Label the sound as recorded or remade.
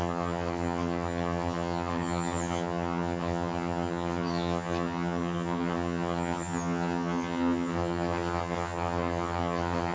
remade